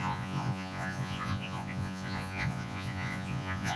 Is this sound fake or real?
fake